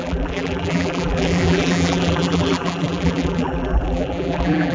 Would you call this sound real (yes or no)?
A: no